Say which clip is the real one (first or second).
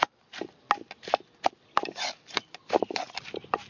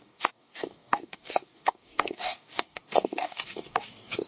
first